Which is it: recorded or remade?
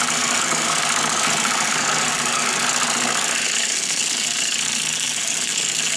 remade